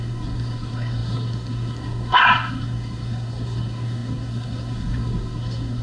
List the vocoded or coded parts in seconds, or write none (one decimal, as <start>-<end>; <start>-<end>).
0.0-5.8